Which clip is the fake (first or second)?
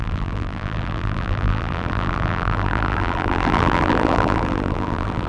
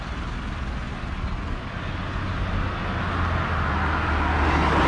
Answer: first